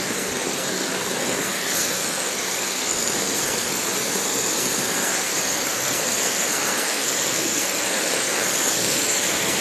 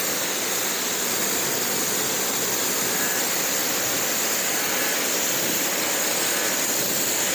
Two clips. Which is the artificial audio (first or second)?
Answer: first